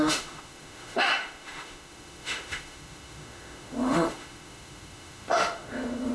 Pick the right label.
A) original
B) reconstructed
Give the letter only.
B